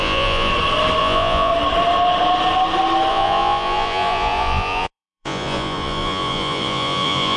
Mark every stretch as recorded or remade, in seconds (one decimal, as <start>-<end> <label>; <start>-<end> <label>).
0.0-0.5 remade; 0.5-1.0 recorded; 1.0-1.5 remade; 1.5-3.1 recorded; 3.1-7.4 remade